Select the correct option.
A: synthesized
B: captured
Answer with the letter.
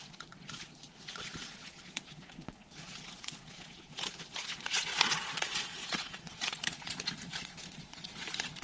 A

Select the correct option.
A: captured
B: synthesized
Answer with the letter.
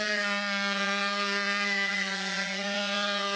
B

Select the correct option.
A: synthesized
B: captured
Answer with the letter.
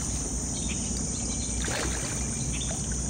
B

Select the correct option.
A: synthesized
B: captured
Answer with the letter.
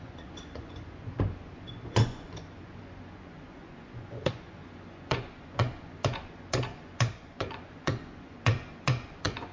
A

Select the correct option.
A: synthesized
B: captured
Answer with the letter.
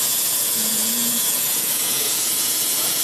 A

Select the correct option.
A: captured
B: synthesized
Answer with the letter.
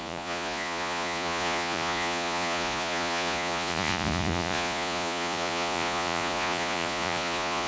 B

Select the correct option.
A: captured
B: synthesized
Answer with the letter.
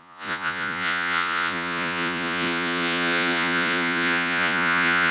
B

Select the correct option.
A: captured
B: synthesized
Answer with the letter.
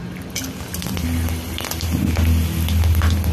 A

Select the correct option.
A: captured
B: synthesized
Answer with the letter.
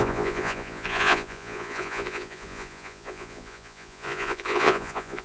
B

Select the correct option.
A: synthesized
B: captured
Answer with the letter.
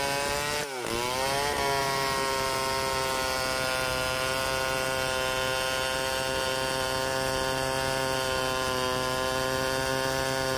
B